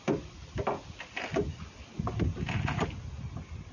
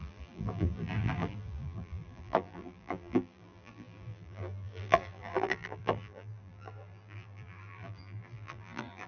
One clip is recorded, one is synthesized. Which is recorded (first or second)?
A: first